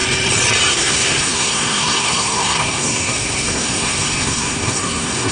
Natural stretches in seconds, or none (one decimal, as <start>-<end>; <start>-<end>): 0.0-0.7